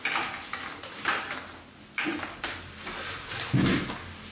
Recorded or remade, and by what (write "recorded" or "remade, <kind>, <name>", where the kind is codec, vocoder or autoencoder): recorded